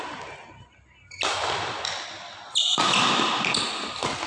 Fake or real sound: real